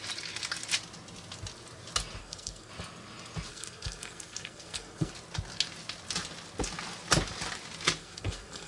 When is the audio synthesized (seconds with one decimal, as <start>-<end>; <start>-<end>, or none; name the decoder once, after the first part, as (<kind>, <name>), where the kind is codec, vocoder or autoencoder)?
2.2-2.7 (codec, SNAC); 3.5-5.1; 8.0-8.7